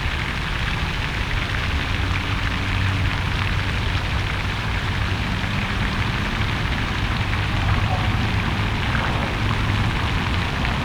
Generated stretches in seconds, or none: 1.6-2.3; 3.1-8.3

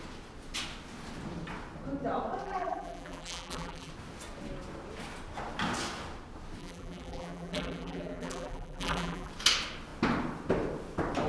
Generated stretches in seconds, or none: 2.4-3.9; 6.6-9.3

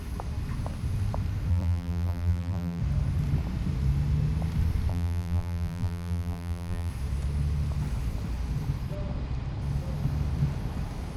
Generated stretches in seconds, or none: 1.5-2.8; 4.9-6.9

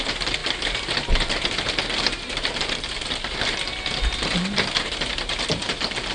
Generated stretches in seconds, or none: 0.0-6.1

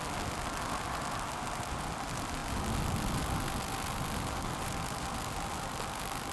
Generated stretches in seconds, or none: none

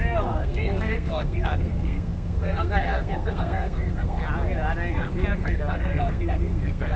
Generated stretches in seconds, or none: 0.0-4.2; 4.9-7.0

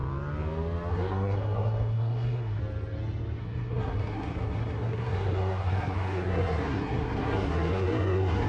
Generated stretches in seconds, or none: 0.9-2.6; 3.4-8.5